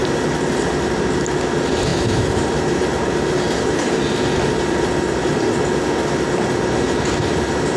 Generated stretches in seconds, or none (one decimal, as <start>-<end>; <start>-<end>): 1.9-4.0